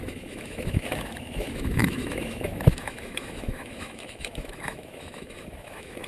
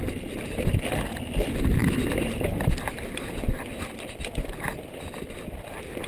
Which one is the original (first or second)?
second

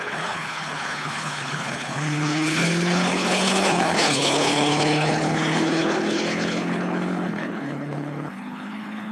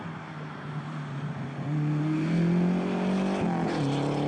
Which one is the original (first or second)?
second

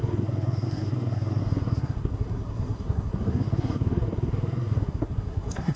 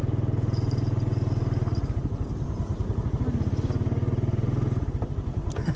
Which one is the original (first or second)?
second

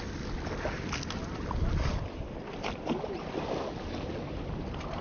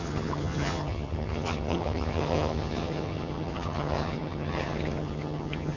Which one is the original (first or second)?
first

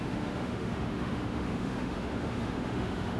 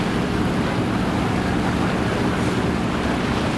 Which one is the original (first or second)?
second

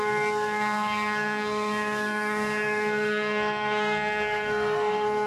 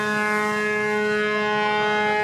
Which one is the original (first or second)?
second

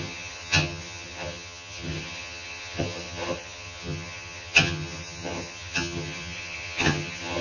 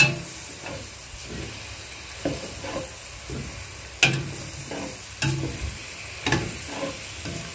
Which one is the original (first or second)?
second